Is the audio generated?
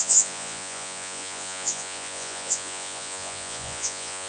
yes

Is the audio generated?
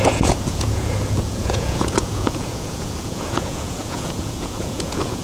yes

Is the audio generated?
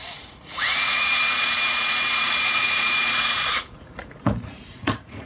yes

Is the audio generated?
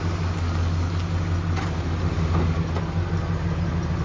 no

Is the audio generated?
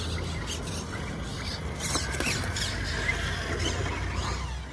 no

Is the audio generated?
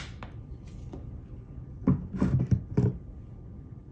no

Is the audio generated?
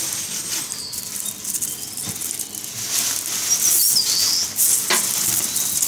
no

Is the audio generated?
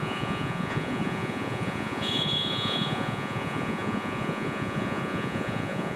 yes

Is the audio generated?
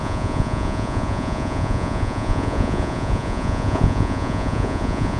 yes